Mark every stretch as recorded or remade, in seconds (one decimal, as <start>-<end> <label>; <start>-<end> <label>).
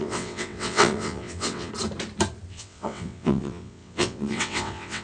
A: 0.0-1.7 remade; 1.7-2.5 recorded; 2.5-5.0 remade